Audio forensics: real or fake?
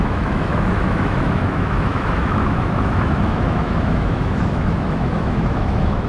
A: fake